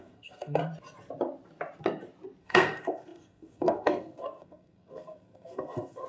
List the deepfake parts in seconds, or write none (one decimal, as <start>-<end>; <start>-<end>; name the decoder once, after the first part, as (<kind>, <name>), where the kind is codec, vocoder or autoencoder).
0.0-0.6 (codec, SNAC); 2.4-6.1